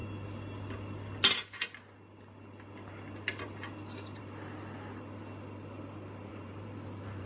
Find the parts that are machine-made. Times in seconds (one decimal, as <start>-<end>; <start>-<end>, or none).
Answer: 6.3-7.3